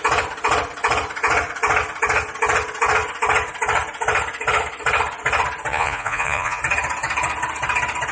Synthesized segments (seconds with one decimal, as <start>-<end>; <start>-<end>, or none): 5.7-6.6